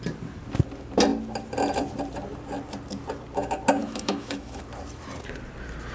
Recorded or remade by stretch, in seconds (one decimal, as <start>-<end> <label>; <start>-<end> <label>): 0.0-3.8 recorded; 3.8-4.6 remade; 4.6-5.9 recorded